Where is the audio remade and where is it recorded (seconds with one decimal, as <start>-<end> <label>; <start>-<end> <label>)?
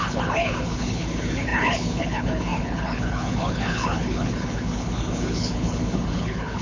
0.0-6.6 remade